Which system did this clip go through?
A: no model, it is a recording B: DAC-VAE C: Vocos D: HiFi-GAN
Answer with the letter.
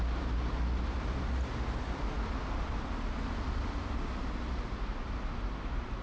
A